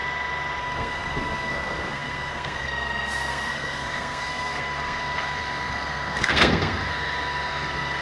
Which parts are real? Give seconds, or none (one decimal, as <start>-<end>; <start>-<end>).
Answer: 0.0-0.6